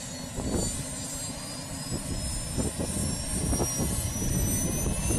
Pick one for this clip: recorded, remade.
recorded